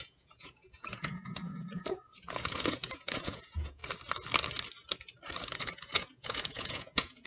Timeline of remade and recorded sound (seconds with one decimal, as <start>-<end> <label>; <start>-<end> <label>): 0.0-3.8 remade; 3.8-5.6 recorded; 5.6-7.3 remade